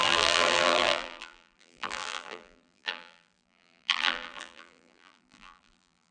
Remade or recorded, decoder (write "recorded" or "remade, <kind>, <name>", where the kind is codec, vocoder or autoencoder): remade, vocoder, BigVGAN v2